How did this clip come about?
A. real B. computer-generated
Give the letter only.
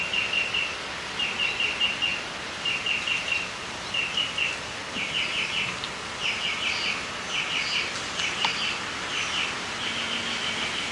A